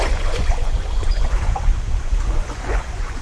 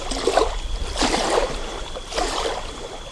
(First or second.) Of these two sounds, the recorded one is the second